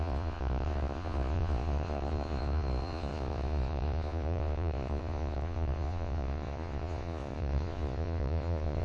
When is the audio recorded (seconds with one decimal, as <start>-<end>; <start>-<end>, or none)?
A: none